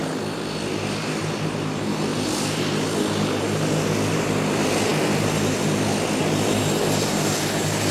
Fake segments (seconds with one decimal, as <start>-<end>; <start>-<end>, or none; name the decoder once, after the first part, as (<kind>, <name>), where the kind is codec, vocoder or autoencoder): none